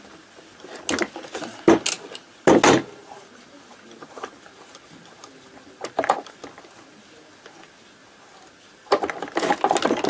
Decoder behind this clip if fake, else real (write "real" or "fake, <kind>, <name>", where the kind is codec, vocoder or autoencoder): real